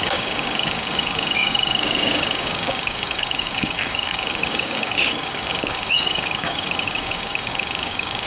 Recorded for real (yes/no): no